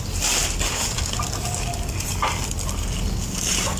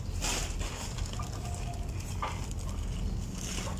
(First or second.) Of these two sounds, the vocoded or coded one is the first